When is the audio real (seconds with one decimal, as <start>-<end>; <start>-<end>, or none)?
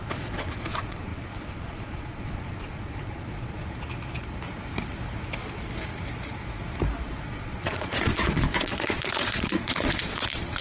3.6-7.1